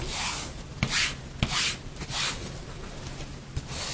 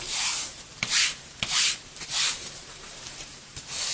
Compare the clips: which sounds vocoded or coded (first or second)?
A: second